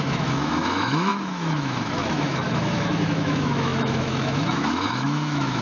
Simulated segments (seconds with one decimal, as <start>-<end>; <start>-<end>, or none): 0.0-5.6